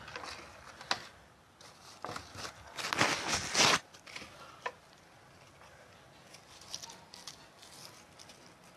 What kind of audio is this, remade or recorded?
recorded